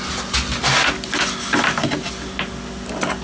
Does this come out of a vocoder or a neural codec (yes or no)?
no